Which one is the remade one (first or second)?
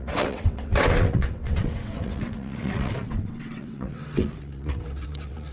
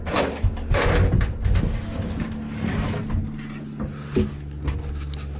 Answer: first